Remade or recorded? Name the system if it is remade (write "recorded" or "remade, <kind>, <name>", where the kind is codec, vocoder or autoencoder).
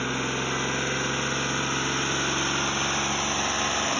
recorded